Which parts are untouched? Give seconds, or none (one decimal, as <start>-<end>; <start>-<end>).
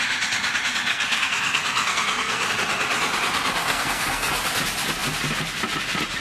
0.0-0.9; 2.5-3.6; 4.3-6.2